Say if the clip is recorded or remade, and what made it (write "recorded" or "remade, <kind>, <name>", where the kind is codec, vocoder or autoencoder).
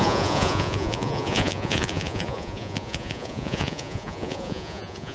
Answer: remade, vocoder, Vocos